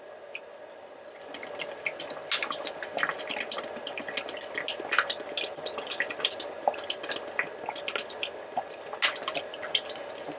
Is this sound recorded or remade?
recorded